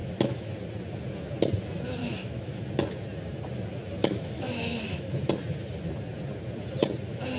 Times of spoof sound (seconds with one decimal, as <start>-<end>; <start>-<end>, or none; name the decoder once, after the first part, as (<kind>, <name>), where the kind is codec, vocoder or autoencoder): 0.0-0.5 (autoencoder, DAC-VAE); 2.0-2.6; 4.0-5.1